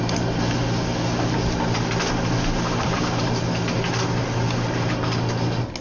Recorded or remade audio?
recorded